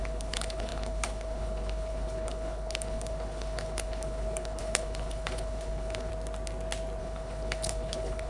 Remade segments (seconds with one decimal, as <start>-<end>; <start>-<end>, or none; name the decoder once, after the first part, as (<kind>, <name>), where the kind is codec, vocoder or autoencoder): 0.0-6.1 (codec, HILCodec); 7.0-8.3